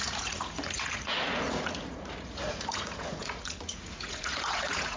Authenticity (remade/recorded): remade